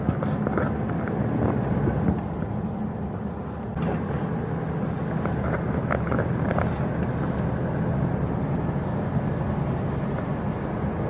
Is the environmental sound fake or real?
real